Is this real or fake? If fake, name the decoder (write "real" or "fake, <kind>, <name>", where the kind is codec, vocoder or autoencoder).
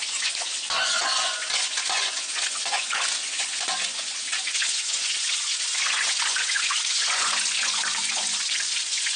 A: fake, vocoder, Vocos